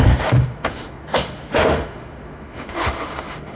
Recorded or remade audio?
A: remade